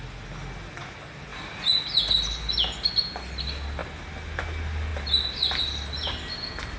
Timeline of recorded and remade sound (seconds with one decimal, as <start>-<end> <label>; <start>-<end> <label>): 0.0-6.8 recorded